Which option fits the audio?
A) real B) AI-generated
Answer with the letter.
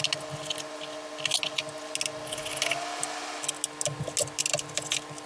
A